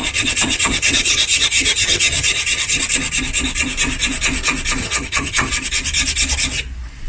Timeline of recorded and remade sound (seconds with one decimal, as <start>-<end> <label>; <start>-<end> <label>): 0.0-2.8 remade; 2.8-4.8 recorded; 4.8-5.5 remade; 5.5-7.1 recorded